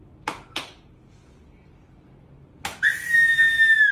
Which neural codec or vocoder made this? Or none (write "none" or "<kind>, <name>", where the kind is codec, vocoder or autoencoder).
none